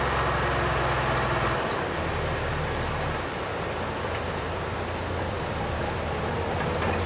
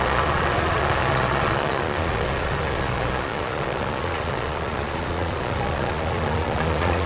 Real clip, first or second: first